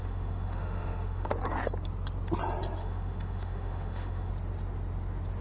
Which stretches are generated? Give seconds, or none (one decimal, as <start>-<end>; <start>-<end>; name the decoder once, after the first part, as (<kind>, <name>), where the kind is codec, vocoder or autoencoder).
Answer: 0.0-1.3 (autoencoder, DAC-VAE); 2.8-4.3